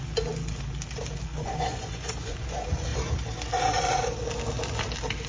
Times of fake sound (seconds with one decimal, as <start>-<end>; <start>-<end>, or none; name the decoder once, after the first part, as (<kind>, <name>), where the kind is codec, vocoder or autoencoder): 1.3-2.5 (vocoder, Vocos)